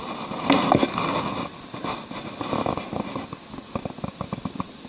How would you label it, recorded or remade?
recorded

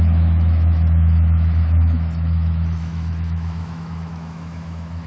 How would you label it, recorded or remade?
remade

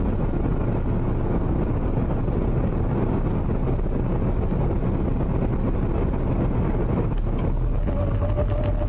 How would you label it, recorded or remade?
recorded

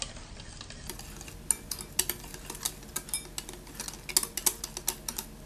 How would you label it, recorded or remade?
recorded